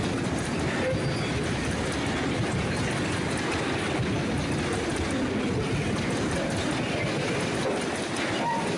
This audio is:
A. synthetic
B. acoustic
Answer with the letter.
B